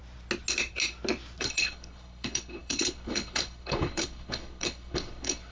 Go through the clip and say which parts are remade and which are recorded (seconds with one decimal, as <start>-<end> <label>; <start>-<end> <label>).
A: 0.0-1.4 recorded; 1.4-5.5 remade